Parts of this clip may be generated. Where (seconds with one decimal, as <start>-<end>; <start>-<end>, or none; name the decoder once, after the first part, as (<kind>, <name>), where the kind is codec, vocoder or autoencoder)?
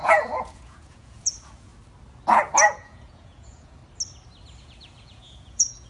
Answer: 0.0-1.7 (vocoder, Vocos); 2.7-3.8; 4.6-5.9